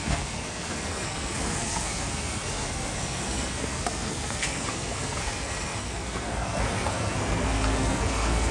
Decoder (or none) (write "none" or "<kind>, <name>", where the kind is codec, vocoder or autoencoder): codec, SNAC